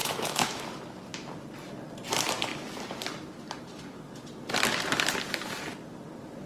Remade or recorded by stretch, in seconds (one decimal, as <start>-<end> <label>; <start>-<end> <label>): 0.0-0.6 remade; 0.6-6.5 recorded